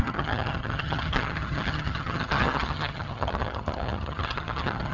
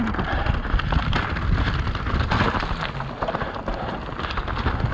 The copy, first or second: first